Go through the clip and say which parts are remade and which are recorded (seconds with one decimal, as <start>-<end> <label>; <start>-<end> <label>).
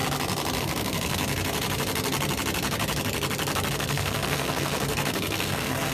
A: 0.0-0.6 recorded; 0.6-1.2 remade; 1.2-3.7 recorded; 3.7-5.9 remade